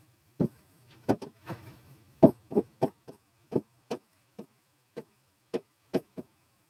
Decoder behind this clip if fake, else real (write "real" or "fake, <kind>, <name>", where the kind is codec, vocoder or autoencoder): fake, autoencoder, DAC-VAE